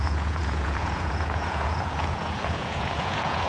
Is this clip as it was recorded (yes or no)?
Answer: no